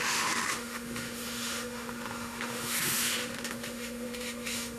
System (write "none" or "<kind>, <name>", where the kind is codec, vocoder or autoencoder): autoencoder, DAC-VAE